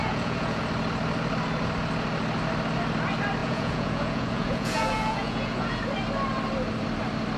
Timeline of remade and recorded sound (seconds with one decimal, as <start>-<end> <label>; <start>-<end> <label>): 0.0-0.6 remade; 0.6-3.4 recorded; 3.4-5.8 remade; 5.8-7.4 recorded